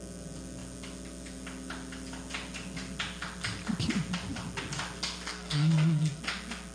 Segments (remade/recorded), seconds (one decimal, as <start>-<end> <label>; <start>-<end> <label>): 0.0-5.3 recorded; 5.3-6.2 remade; 6.2-6.7 recorded